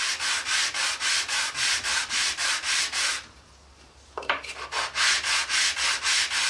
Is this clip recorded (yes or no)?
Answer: yes